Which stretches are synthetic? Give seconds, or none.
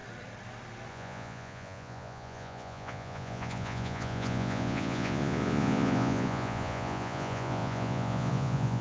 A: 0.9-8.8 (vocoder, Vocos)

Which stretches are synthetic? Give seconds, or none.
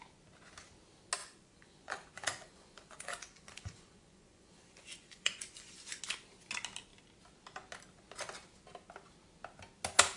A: 1.2-6.0 (vocoder, Vocos)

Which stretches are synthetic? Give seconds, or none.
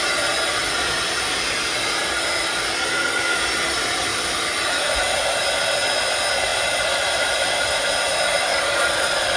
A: 8.5-9.4 (vocoder, Vocos)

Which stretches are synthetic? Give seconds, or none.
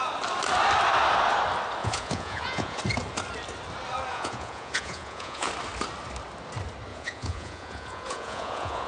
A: 1.8-2.8 (vocoder, Vocos); 4.1-5.5; 6.9-8.9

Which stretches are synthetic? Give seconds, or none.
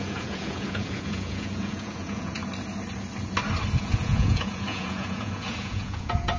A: 0.0-2.4 (vocoder, Vocos); 3.8-6.4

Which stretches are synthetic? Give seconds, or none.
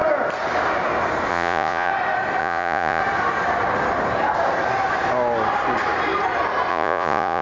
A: 1.3-1.9 (vocoder, Vocos); 2.4-3.0; 6.7-7.4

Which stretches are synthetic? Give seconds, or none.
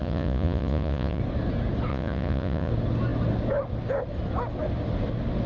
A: 0.0-1.2 (vocoder, Vocos); 1.9-2.7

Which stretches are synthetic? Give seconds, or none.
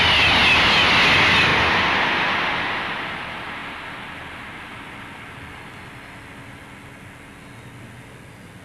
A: none